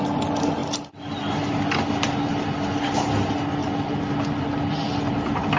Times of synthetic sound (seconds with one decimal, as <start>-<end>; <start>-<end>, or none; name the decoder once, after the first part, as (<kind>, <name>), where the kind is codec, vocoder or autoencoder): none